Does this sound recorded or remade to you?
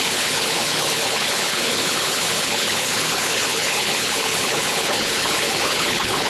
remade